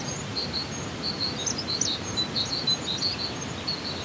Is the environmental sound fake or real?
real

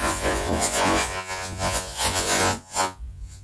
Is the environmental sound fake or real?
fake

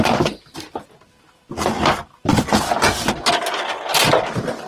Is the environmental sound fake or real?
fake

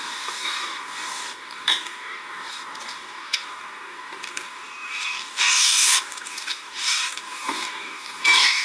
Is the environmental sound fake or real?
fake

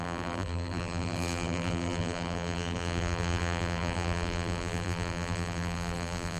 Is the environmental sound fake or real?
fake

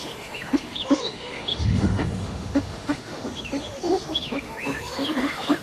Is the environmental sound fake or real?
fake